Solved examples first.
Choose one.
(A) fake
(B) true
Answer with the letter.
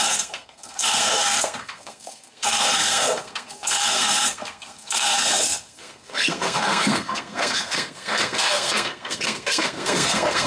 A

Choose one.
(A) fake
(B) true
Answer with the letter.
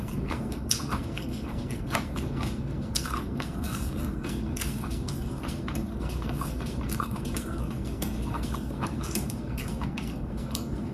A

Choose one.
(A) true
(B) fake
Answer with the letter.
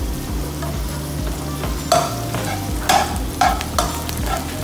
A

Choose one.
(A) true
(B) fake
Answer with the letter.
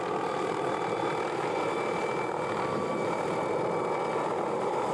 A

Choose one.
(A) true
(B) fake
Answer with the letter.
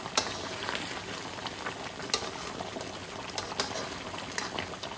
A